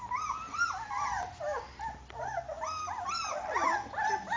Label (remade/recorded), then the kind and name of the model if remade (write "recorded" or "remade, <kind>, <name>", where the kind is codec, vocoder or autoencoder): recorded